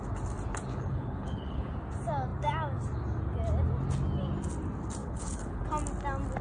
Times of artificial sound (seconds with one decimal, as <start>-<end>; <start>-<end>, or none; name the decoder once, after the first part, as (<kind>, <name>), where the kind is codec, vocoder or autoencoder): 0.7-1.7 (codec, HILCodec); 5.0-5.6